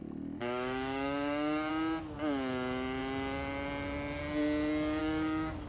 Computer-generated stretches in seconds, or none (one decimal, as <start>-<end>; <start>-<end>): 0.4-1.7; 5.0-5.7